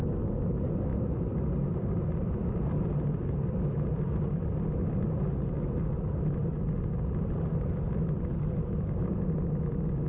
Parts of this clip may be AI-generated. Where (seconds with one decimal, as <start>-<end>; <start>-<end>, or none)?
0.9-4.4; 6.4-8.5